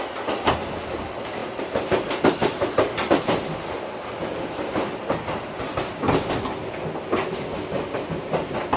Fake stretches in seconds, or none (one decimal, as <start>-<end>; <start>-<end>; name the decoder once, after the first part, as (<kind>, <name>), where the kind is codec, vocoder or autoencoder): none